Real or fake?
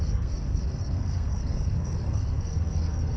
fake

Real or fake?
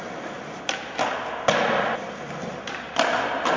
real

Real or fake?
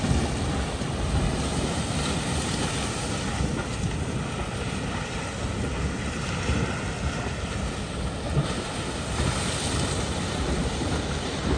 real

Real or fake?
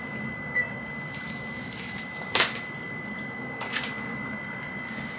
real